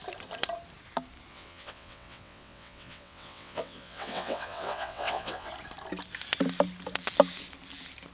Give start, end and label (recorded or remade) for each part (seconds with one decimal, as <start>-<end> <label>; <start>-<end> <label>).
0.0-1.3 recorded; 1.3-5.5 remade; 5.5-8.1 recorded

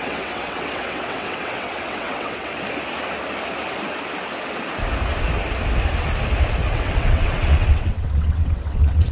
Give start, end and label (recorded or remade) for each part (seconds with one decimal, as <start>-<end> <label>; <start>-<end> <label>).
0.0-2.5 remade; 2.5-6.7 recorded; 6.7-9.1 remade

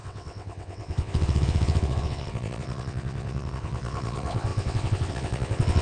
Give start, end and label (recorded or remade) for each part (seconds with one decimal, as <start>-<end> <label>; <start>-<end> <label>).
0.0-5.8 remade